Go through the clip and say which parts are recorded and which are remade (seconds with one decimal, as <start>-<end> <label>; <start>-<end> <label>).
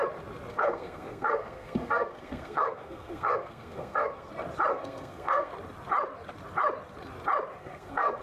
0.0-0.5 recorded; 0.5-4.3 remade; 4.3-4.7 recorded; 4.7-5.5 remade; 5.5-7.6 recorded; 7.6-8.2 remade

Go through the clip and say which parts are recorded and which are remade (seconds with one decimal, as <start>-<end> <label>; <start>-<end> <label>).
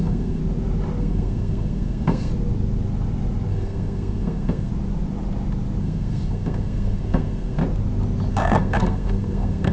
0.0-0.4 remade; 0.4-1.0 recorded; 1.0-2.3 remade; 2.3-3.5 recorded; 3.5-4.7 remade; 4.7-5.8 recorded; 5.8-7.6 remade; 7.6-8.3 recorded; 8.3-9.7 remade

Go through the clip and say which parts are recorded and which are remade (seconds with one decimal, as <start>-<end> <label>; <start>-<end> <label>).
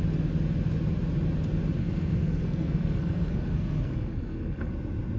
0.0-1.8 recorded; 1.8-4.7 remade; 4.7-5.2 recorded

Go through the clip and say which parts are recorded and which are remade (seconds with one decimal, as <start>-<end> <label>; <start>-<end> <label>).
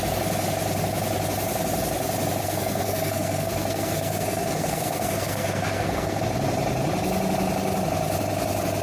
0.0-2.4 recorded; 2.4-6.2 remade; 6.2-8.8 recorded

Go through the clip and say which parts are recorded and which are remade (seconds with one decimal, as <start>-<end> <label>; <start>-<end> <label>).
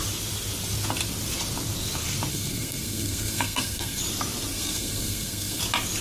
0.0-2.3 recorded; 2.3-4.0 remade; 4.0-4.5 recorded; 4.5-5.6 remade; 5.6-6.0 recorded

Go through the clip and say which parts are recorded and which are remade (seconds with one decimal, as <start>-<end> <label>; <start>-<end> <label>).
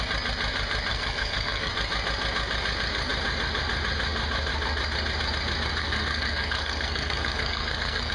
0.0-0.9 recorded; 0.9-1.7 remade; 1.7-5.8 recorded; 5.8-8.1 remade